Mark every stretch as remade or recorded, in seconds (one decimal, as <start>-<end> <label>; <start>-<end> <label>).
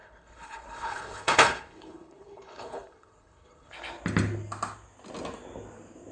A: 0.0-3.7 remade; 3.7-6.1 recorded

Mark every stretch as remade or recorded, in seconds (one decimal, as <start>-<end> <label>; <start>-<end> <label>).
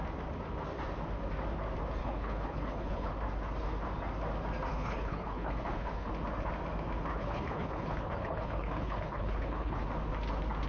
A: 0.0-2.0 recorded; 2.0-3.1 remade; 3.1-4.7 recorded; 4.7-6.1 remade; 6.1-7.1 recorded; 7.1-9.8 remade; 9.8-10.7 recorded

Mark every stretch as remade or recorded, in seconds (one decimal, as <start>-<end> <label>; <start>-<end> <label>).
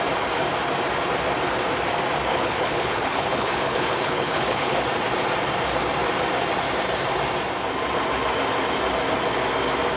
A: 0.0-2.3 recorded; 2.3-4.8 remade; 4.8-10.0 recorded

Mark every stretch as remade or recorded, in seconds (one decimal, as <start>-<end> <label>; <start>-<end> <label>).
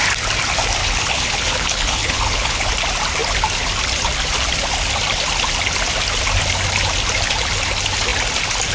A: 0.0-0.8 recorded; 0.8-2.7 remade; 2.7-8.7 recorded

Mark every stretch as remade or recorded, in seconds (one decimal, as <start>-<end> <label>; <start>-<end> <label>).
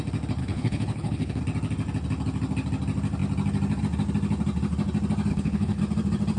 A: 0.0-0.4 recorded; 0.4-1.4 remade; 1.4-5.3 recorded; 5.3-5.8 remade; 5.8-6.4 recorded